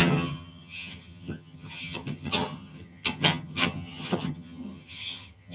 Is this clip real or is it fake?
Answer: fake